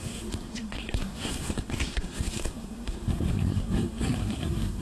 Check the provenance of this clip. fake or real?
fake